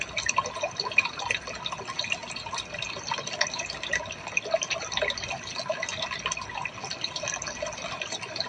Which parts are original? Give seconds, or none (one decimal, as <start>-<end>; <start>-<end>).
0.0-8.5